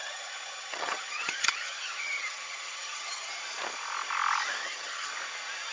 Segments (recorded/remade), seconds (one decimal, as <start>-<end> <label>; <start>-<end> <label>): 0.0-3.3 remade; 3.3-4.6 recorded; 4.6-5.1 remade; 5.1-5.7 recorded